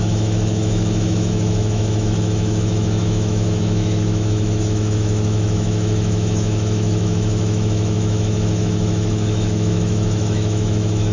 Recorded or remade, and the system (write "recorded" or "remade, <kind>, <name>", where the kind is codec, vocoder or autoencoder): remade, autoencoder, DAC-VAE